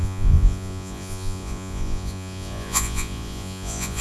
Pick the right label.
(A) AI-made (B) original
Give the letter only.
A